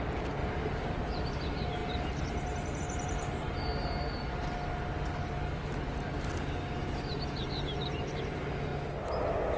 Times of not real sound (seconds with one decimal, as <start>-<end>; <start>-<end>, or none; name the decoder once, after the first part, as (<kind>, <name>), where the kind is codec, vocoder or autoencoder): 0.0-0.4 (vocoder, BigVGAN v2); 0.9-3.7; 6.8-8.7